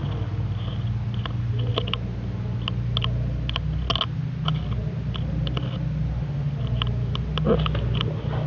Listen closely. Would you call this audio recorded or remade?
recorded